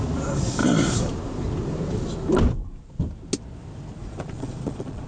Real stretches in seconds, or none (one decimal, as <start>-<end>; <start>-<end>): 0.0-4.0